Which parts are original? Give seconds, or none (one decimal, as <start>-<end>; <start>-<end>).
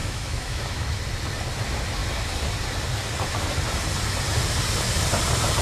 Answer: 1.0-5.6